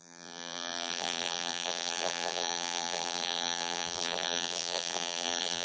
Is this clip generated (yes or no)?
yes